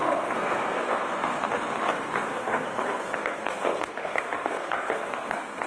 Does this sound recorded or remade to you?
remade